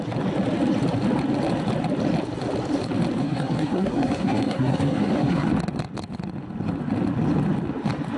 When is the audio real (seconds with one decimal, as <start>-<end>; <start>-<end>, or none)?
0.0-3.2; 5.5-8.2